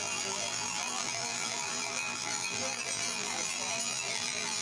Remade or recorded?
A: remade